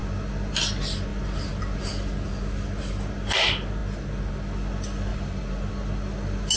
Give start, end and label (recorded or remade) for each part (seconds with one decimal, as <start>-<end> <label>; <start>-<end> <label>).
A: 0.0-5.1 recorded; 5.1-5.7 remade; 5.7-6.6 recorded